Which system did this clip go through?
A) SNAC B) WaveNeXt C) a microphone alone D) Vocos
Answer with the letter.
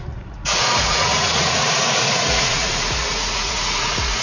D